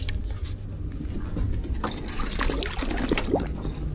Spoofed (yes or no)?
no